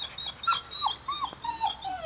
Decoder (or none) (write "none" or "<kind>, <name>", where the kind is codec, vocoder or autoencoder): none